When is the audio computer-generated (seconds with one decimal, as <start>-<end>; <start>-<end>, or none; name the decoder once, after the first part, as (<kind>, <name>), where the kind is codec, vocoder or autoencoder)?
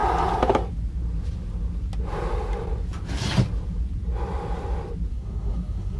5.1-6.0 (codec, SNAC)